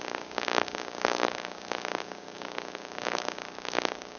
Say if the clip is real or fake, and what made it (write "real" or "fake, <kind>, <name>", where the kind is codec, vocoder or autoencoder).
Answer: fake, codec, DAC